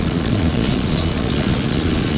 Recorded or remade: remade